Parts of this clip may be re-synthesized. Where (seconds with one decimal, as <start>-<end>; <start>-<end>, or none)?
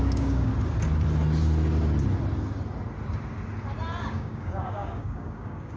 0.0-0.5; 4.0-5.8